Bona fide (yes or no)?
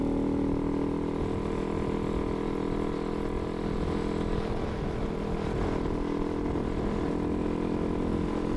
yes